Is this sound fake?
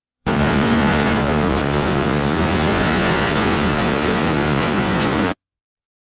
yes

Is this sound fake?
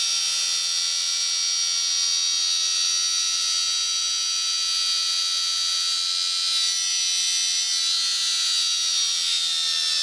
no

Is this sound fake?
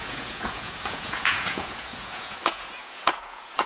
yes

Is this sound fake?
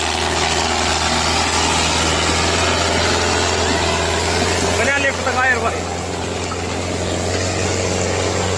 no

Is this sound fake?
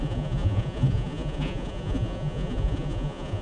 yes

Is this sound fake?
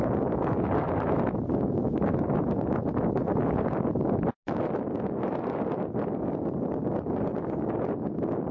no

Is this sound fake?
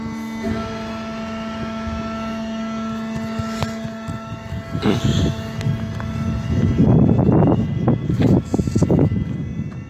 no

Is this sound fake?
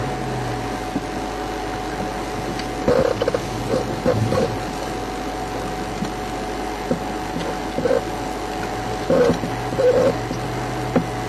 no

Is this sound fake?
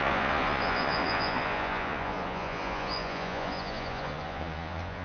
yes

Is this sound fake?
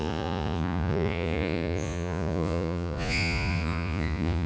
yes